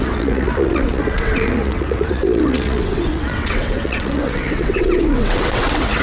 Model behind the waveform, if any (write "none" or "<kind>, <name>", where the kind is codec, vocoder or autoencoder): vocoder, WaveNeXt